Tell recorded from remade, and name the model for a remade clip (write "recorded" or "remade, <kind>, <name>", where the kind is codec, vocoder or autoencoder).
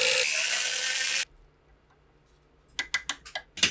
recorded